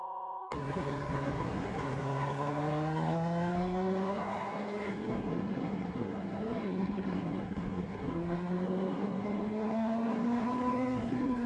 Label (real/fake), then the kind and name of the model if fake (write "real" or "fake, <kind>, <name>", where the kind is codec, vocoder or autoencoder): fake, codec, SNAC